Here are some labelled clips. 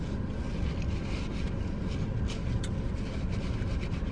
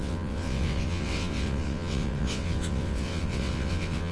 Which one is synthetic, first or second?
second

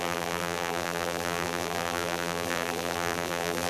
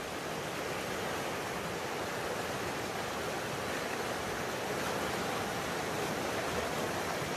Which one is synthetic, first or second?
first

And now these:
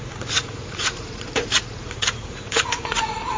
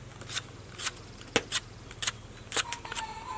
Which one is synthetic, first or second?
first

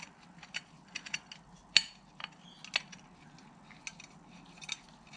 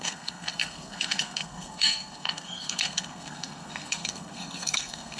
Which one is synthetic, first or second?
second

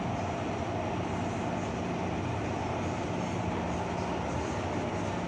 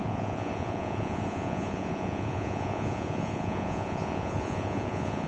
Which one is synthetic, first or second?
second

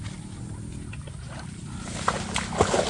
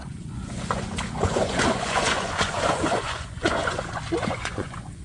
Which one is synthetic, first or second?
second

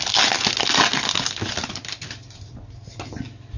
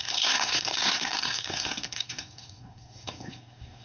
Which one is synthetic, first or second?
second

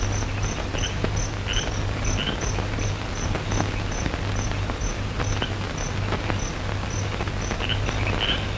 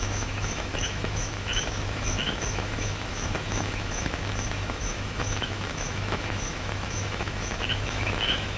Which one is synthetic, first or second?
second